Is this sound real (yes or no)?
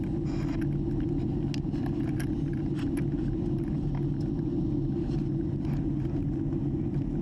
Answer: yes